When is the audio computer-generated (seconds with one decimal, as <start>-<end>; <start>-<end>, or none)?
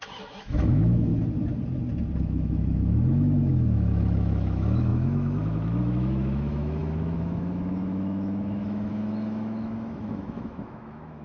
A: 0.0-1.1; 2.2-11.2